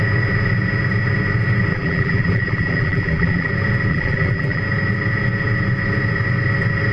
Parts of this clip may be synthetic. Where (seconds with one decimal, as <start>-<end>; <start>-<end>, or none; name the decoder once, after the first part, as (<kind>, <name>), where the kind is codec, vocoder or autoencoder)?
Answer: 1.7-3.5 (vocoder, BigVGAN v2); 3.9-4.6